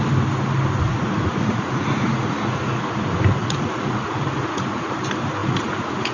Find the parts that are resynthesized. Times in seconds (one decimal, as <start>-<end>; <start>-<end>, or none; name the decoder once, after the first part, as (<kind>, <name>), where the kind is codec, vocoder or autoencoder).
0.9-2.8 (vocoder, Vocos); 3.4-4.9; 5.4-6.1